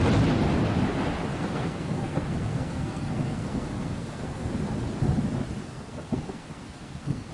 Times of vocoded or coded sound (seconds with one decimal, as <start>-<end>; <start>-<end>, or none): 1.3-4.5; 5.6-7.3